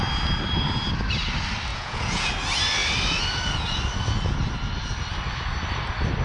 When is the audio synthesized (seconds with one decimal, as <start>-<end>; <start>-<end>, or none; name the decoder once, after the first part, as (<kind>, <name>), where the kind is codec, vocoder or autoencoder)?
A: 1.7-2.3 (vocoder, Vocos)